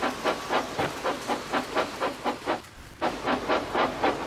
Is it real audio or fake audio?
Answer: real